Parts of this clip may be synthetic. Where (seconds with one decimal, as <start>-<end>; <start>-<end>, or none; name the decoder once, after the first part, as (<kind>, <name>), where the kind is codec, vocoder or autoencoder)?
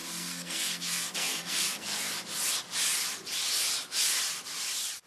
0.0-2.1 (codec, SNAC)